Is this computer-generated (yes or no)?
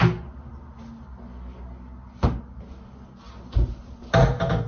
no